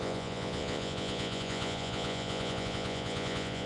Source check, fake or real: fake